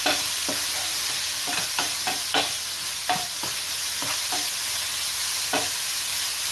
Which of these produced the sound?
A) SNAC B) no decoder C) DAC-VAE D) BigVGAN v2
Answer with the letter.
D